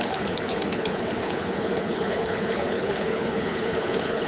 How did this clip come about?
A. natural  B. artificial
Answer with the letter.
B